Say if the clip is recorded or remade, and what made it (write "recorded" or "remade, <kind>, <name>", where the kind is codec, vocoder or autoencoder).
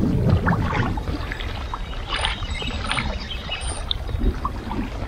remade, vocoder, BigVGAN v2